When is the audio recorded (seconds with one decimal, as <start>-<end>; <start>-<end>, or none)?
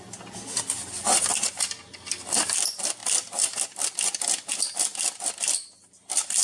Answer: 0.0-6.4